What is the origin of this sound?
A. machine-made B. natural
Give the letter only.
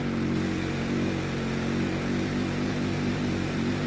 B